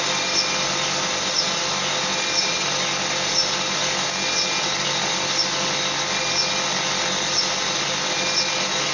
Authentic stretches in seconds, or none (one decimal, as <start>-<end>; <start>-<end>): 0.0-8.9